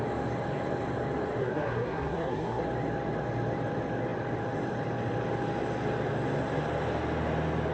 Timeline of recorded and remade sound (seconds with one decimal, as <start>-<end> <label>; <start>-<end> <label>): 0.0-1.4 recorded; 1.4-2.6 remade; 2.6-7.7 recorded